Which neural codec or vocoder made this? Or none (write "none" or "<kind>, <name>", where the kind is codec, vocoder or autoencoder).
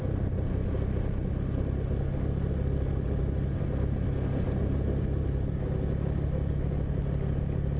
none